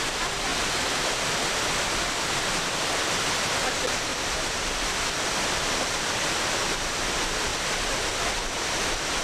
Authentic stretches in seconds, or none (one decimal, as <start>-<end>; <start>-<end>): 0.0-0.5; 1.4-4.1; 6.2-7.5